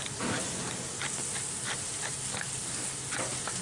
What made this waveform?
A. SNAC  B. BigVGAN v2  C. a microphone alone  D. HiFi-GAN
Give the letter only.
C